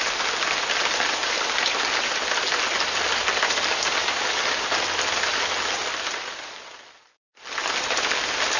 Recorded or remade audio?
recorded